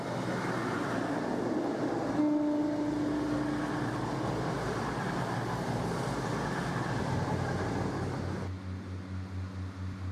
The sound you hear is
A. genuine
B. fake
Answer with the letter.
A